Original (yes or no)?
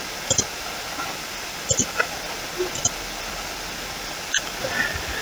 yes